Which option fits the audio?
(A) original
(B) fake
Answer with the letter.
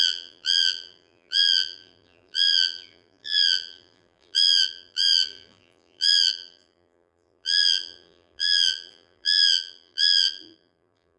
B